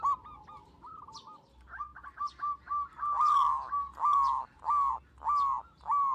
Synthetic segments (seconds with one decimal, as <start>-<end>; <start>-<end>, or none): none

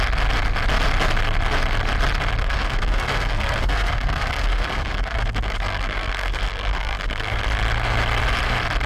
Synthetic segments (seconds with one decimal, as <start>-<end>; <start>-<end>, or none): 2.4-7.4

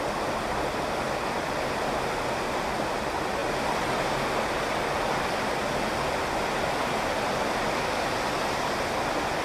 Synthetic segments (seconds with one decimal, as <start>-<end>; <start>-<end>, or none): none

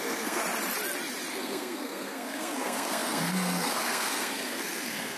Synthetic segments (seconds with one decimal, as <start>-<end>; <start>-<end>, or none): 0.0-0.4; 1.3-5.2

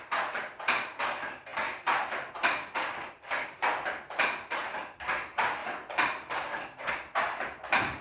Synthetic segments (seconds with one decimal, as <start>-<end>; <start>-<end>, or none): none

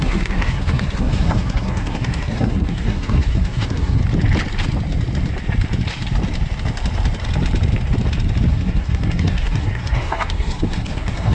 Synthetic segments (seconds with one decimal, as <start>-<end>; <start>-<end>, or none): 0.0-4.0; 8.5-11.3

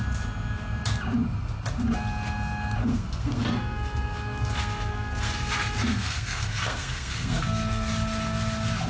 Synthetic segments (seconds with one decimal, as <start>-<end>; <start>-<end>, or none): 2.8-7.9

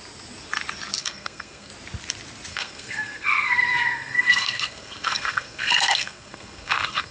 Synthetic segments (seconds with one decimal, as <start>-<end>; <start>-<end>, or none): 1.0-1.7; 2.5-7.1